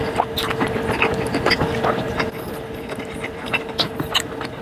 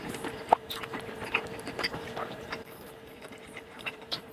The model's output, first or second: second